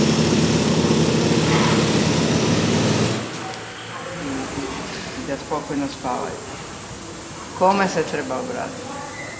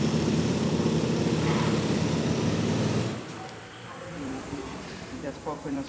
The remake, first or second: second